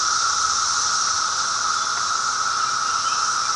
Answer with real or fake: real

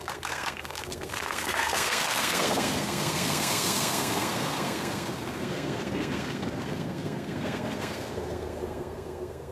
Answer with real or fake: fake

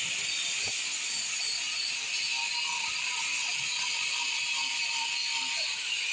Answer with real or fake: real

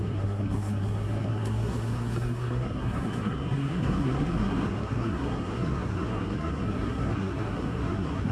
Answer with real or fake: fake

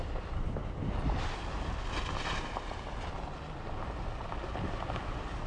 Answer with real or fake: real